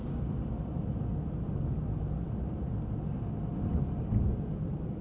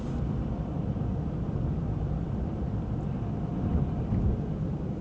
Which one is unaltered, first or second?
first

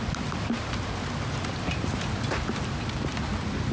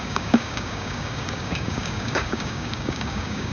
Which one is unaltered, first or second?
first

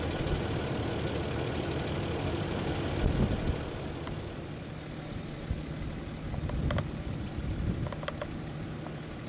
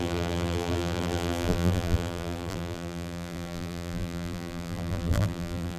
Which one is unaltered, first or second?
first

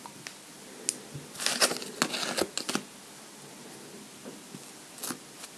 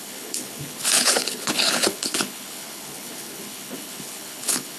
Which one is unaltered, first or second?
first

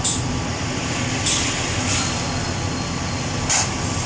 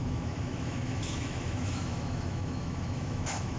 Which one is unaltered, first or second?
first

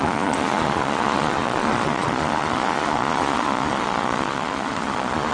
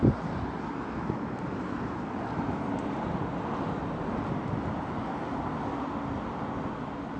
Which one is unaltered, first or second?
second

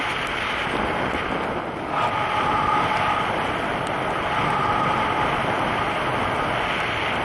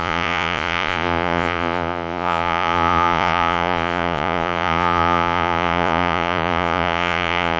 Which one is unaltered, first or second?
first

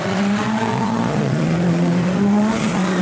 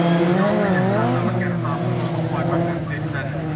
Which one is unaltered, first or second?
second